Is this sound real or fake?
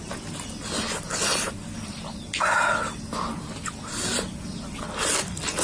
real